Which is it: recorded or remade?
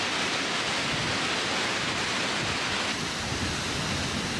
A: recorded